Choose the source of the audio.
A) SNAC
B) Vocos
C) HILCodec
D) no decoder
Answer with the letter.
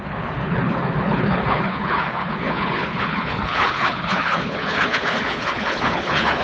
C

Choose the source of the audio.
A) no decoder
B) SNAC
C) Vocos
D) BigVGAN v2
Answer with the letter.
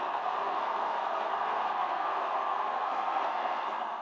B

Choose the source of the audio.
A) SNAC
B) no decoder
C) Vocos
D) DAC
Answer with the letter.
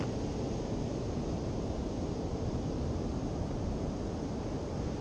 B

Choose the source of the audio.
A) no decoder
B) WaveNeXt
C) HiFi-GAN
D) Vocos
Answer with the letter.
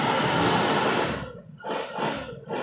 A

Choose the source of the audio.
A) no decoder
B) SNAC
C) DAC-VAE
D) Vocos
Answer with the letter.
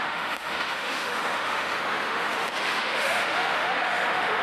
C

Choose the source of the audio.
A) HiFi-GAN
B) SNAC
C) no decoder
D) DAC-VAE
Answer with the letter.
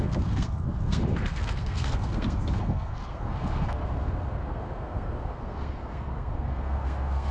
B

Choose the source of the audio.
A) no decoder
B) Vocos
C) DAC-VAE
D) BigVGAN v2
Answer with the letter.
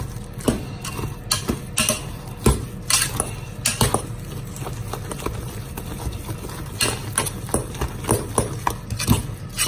A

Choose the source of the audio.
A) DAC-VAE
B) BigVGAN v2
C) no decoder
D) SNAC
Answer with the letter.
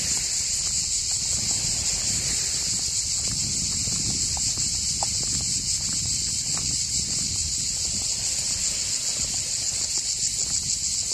C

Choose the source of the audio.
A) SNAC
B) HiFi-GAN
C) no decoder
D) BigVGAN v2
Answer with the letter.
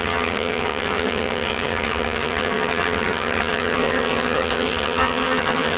B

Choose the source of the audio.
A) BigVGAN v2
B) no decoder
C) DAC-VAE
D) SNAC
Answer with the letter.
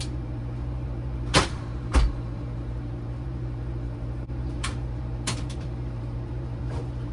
A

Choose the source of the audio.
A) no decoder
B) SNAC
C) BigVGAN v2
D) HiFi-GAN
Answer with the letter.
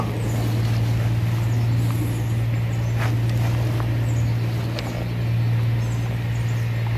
A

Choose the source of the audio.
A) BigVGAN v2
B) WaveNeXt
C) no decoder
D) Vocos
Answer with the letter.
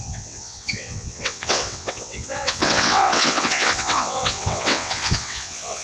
B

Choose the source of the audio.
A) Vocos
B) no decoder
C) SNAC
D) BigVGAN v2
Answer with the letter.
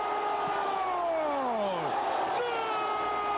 B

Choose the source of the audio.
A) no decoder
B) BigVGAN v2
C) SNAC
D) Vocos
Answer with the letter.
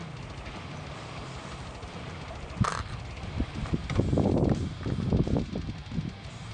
A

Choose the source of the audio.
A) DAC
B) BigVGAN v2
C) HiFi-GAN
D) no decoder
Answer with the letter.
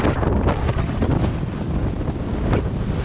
B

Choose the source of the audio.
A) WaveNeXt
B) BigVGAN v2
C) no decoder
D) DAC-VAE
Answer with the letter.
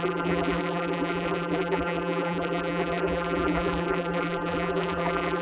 B